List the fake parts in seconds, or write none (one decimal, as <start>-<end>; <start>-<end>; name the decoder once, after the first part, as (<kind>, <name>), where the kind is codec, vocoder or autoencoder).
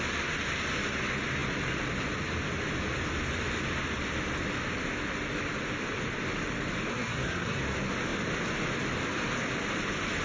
6.9-7.6 (codec, SNAC)